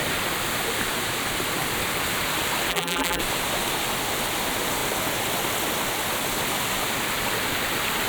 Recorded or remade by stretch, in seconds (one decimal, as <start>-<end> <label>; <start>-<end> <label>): 0.0-2.7 recorded; 2.7-3.2 remade; 3.2-8.1 recorded